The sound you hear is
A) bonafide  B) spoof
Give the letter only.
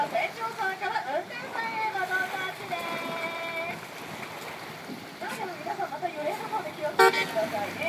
A